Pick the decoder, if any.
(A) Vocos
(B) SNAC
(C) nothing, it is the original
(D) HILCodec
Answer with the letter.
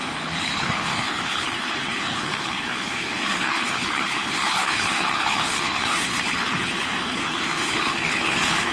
D